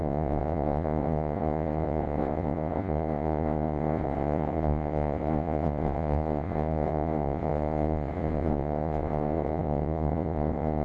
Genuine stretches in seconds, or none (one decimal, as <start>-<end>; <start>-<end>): none